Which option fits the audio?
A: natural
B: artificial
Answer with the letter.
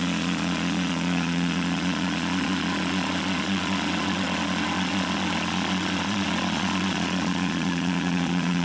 B